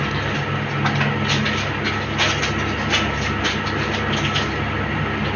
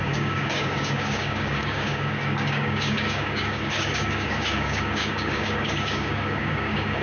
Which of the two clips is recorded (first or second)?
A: first